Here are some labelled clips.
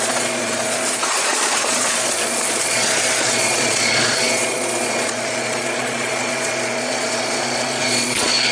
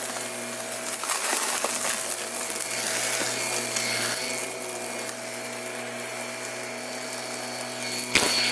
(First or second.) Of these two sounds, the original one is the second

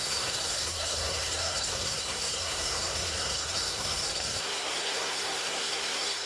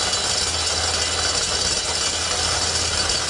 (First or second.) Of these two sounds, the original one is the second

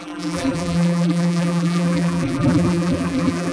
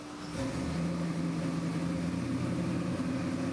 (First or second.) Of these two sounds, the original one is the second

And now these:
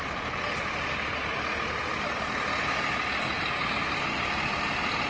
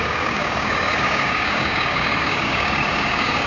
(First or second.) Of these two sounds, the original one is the first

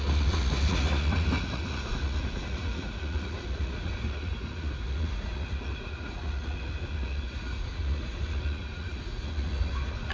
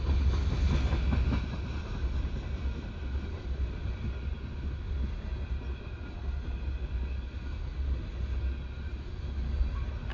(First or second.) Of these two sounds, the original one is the second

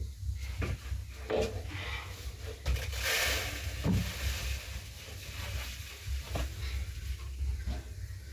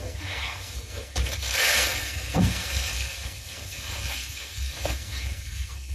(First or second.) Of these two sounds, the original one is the first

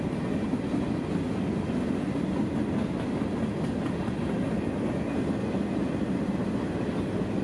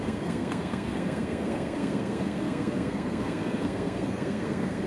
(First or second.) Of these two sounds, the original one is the first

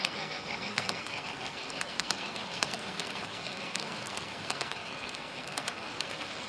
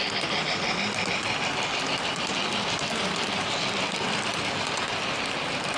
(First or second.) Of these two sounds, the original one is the second